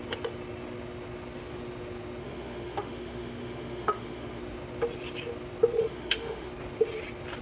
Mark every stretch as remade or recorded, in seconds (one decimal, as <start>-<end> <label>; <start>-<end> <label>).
0.0-2.2 recorded; 2.2-4.4 remade; 4.4-5.8 recorded; 5.8-6.5 remade; 6.5-7.4 recorded